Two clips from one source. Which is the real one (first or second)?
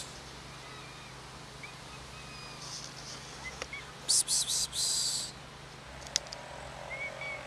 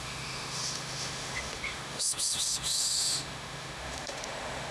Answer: first